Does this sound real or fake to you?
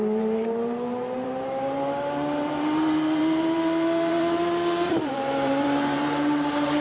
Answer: fake